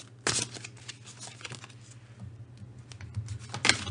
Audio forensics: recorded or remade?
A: recorded